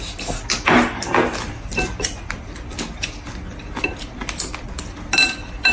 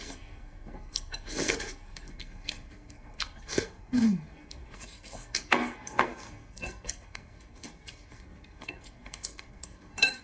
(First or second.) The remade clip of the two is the second